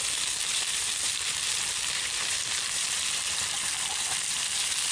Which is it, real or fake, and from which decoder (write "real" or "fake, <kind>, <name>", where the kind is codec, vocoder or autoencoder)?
fake, vocoder, BigVGAN v2